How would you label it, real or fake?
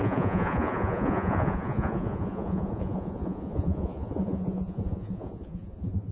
fake